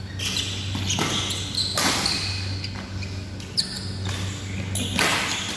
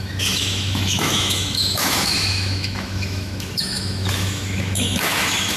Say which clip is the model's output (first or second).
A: second